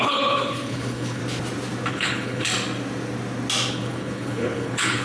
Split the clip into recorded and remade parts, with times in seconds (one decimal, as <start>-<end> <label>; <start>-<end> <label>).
0.0-1.2 remade; 1.2-1.9 recorded; 1.9-2.5 remade; 2.5-3.7 recorded; 3.7-5.0 remade